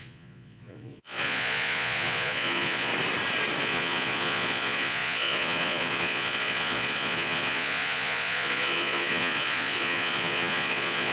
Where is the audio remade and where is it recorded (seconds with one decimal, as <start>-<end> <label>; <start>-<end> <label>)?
0.0-2.9 remade; 2.9-3.6 recorded; 3.6-11.1 remade